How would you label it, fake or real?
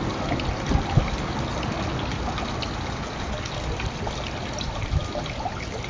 real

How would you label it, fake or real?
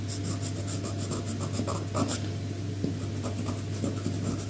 real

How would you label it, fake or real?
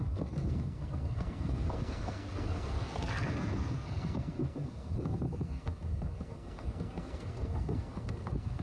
fake